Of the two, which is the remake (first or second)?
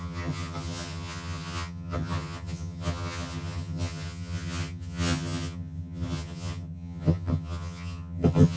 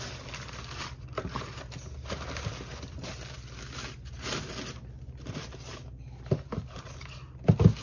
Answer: first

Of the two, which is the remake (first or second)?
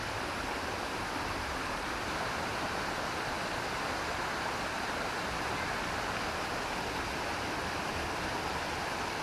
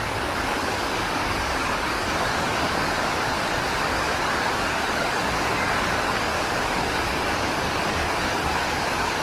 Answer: second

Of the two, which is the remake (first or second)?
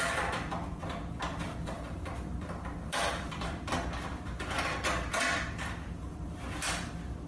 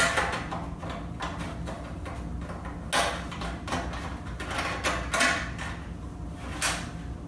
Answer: first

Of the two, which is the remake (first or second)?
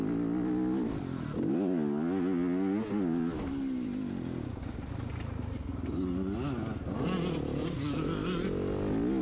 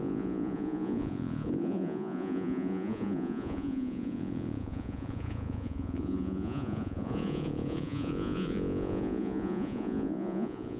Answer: second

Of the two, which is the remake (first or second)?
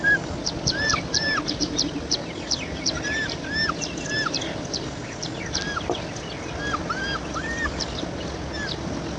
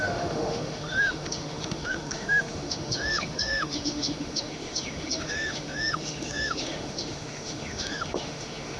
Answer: second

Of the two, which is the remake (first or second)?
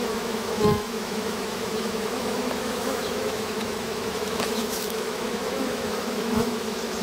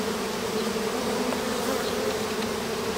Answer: first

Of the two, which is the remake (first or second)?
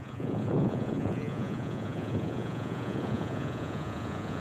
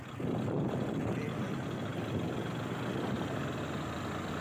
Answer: first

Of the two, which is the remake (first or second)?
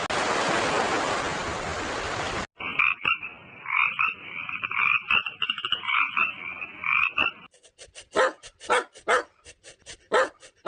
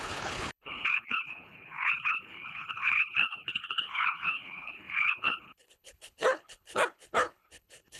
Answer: second